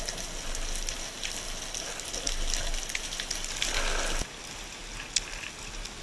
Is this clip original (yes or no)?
yes